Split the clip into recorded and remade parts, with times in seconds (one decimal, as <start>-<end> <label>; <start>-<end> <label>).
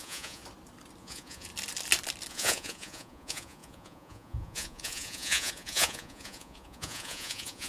0.0-0.4 remade; 0.4-1.0 recorded; 1.0-1.5 remade; 1.5-2.3 recorded; 2.3-7.7 remade